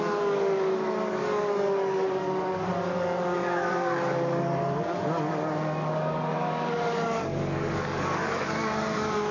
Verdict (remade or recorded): remade